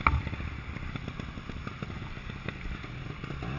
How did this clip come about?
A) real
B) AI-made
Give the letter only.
A